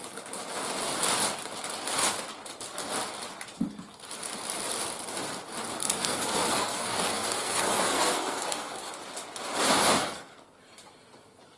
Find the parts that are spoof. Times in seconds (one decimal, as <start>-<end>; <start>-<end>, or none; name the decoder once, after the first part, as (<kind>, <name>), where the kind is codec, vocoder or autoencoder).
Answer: 5.8-8.9 (codec, SNAC); 10.0-10.6